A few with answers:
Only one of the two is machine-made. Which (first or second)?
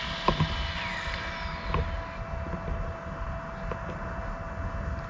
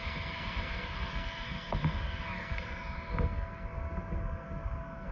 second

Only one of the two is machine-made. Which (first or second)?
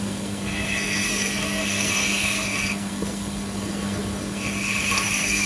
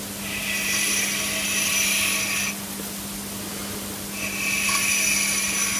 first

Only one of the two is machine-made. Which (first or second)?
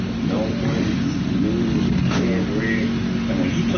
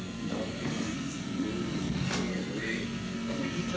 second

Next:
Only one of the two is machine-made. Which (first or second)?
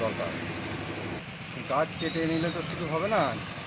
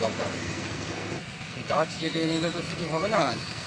second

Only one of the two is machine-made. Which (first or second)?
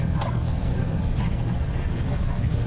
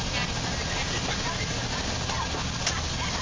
first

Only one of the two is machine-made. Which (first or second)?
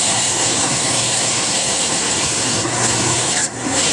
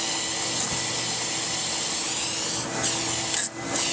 first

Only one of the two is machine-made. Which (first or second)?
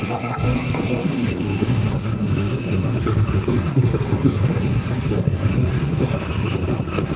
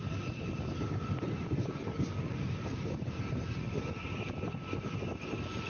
first